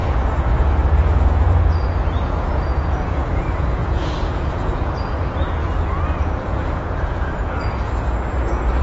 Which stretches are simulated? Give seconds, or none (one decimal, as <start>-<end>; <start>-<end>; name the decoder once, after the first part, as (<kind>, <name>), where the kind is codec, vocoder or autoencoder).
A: 0.0-8.8 (vocoder, Vocos)